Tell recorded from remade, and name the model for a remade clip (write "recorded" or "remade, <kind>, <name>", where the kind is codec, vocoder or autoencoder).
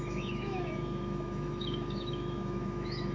remade, autoencoder, DAC-VAE